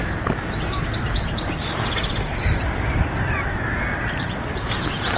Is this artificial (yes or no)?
no